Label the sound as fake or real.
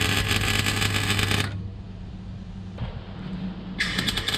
real